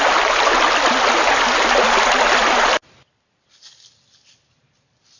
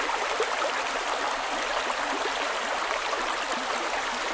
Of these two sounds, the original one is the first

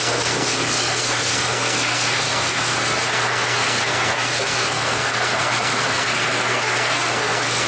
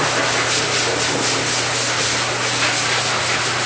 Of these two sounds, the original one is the second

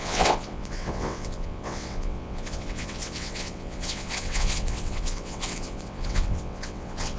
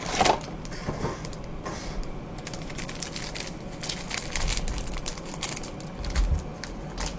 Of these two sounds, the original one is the second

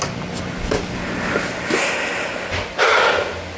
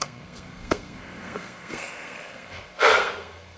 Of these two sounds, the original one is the first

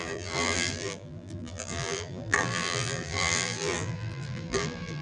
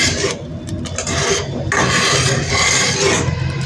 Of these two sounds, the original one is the second